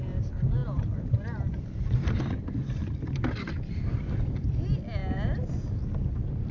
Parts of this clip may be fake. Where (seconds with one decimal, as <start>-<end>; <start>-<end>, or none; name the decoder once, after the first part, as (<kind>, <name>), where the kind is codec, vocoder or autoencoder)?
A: none